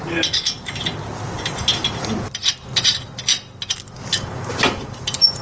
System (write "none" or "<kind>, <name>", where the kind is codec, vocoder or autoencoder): none